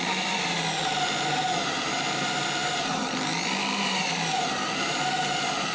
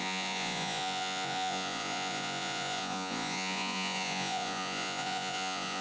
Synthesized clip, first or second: second